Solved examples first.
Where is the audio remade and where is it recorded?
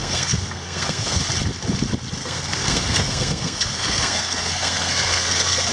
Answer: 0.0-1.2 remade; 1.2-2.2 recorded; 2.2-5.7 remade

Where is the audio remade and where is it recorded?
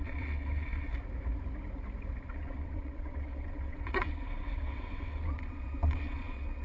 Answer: 0.0-0.9 remade; 0.9-2.3 recorded; 2.3-6.6 remade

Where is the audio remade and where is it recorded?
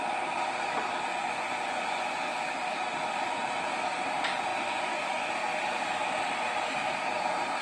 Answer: 0.0-1.1 recorded; 1.1-2.4 remade; 2.4-4.5 recorded; 4.5-5.3 remade; 5.3-7.6 recorded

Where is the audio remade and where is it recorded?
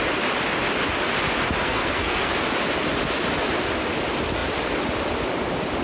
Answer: 0.0-1.6 recorded; 1.6-2.3 remade; 2.3-5.8 recorded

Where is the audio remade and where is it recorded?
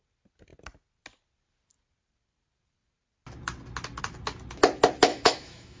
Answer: 0.0-5.1 recorded; 5.1-5.8 remade